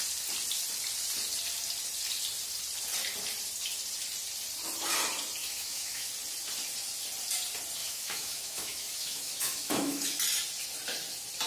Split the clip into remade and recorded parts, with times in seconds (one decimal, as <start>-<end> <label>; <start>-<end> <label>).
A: 0.0-5.4 recorded; 5.4-6.1 remade; 6.1-7.8 recorded; 7.8-10.2 remade; 10.2-11.5 recorded